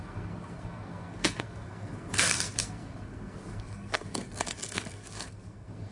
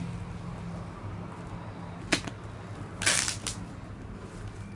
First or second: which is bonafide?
second